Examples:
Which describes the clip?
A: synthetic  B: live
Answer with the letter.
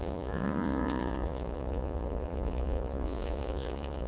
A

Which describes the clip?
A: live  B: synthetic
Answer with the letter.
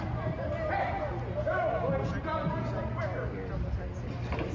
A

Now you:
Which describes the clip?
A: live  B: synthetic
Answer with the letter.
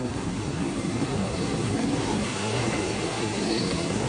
B